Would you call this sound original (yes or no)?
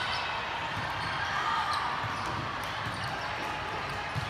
yes